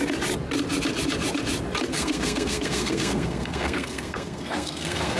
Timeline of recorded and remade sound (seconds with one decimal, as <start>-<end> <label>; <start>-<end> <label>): 0.0-1.9 recorded; 1.9-5.2 remade